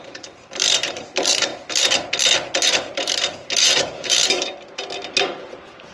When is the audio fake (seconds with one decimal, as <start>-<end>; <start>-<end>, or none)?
0.0-1.5; 2.7-4.2; 5.1-5.9